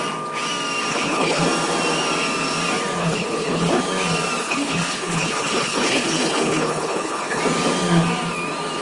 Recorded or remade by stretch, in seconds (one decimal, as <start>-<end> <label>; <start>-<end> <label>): 0.0-0.9 recorded; 0.9-1.4 remade; 1.4-3.0 recorded; 3.0-3.8 remade; 3.8-4.4 recorded; 4.4-7.4 remade; 7.4-8.8 recorded